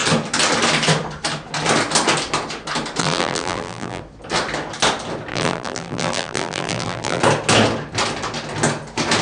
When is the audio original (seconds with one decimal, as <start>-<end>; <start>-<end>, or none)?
0.0-3.0; 4.0-5.3; 7.2-9.2